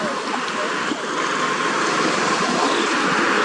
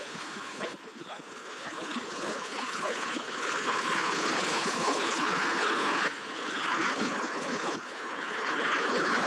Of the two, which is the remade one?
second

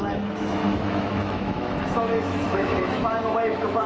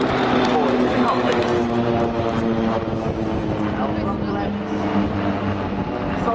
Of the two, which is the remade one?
first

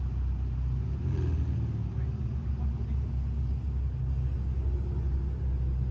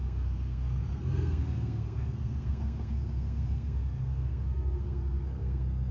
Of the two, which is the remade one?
second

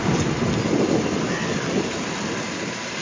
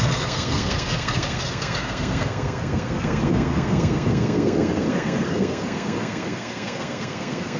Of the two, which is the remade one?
second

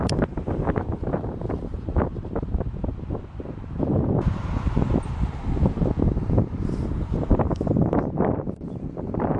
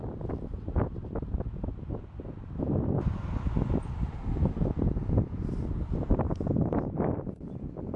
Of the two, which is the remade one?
first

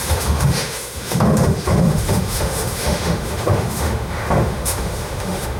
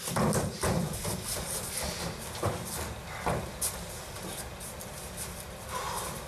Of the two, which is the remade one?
first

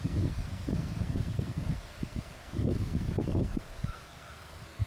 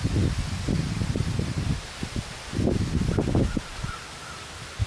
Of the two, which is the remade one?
first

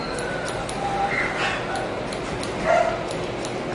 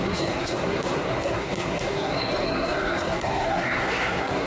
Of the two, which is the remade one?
second